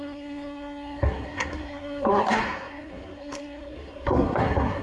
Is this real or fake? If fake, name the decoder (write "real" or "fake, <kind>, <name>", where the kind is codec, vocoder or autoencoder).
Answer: fake, codec, SNAC